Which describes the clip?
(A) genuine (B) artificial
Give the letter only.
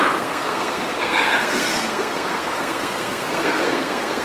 B